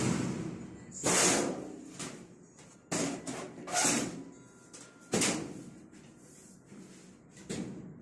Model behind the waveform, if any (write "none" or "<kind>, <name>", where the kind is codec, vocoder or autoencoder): none